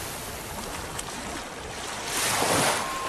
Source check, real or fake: real